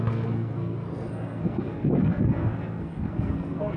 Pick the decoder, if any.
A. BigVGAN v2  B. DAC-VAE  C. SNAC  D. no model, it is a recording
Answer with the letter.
C